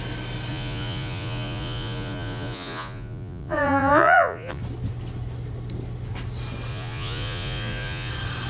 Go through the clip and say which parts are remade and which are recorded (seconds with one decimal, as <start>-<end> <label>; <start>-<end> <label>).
0.0-0.5 recorded; 0.5-4.6 remade; 4.6-6.7 recorded; 6.7-8.1 remade; 8.1-8.5 recorded